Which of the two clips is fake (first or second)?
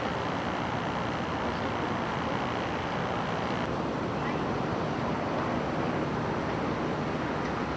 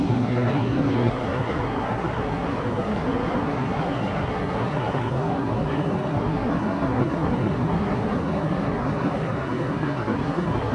second